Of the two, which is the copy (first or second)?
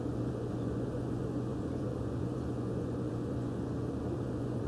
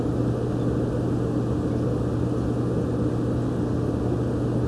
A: first